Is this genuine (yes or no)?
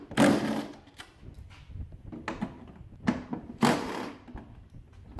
yes